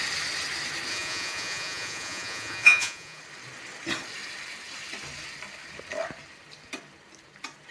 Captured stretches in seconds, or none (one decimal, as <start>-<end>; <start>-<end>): 0.0-0.9; 3.2-7.7